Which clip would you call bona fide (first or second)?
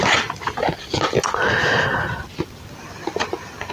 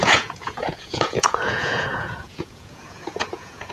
first